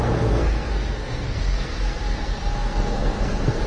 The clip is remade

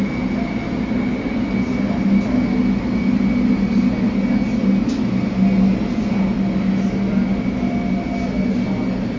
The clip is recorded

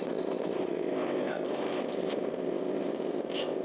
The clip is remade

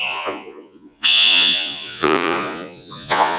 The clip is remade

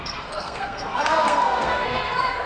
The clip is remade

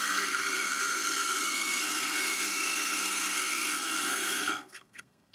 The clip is remade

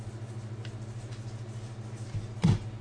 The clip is recorded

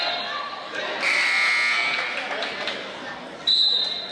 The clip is recorded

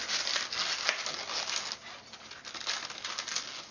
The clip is recorded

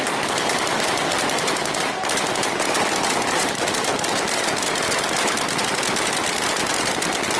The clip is recorded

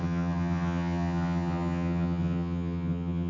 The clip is remade